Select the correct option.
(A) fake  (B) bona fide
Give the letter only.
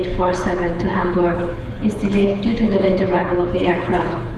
A